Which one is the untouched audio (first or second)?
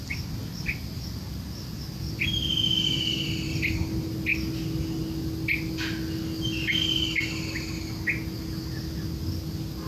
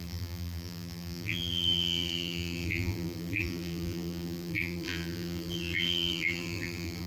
first